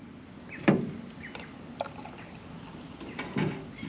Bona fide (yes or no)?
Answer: yes